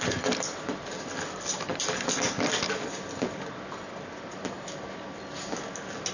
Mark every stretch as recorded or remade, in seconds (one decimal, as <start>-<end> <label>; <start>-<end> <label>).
0.0-6.1 recorded